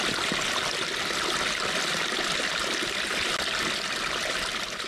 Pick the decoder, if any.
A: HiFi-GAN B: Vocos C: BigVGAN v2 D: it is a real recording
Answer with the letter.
D